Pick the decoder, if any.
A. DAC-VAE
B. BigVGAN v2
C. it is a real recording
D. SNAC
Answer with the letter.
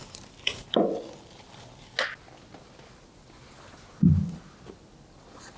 C